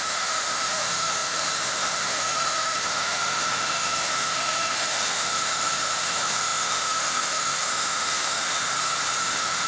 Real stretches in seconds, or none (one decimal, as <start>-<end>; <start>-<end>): 8.7-9.2

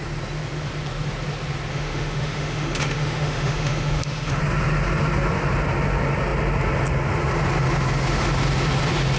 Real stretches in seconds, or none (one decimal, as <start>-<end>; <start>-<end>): 0.0-1.7; 4.4-9.2

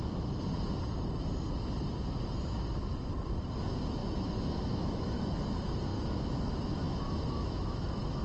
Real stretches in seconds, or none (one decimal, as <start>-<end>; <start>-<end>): 0.0-4.0; 5.4-5.9

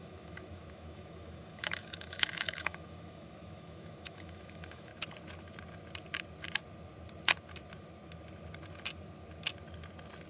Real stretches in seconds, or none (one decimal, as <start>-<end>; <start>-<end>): 4.9-10.3